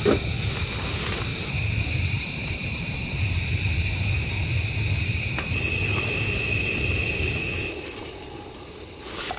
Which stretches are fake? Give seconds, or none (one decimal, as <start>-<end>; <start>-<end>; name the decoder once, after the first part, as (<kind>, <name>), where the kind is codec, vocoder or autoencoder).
1.3-4.7 (vocoder, BigVGAN v2); 5.9-7.3